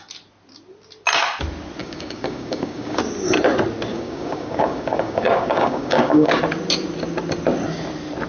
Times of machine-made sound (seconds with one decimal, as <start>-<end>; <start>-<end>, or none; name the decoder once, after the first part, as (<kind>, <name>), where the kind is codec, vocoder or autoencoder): 1.8-3.0 (codec, DAC); 3.9-6.4